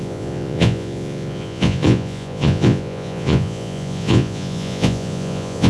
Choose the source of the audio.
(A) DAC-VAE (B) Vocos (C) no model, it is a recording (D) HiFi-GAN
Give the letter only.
B